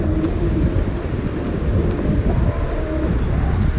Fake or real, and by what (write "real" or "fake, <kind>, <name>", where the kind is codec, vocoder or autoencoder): real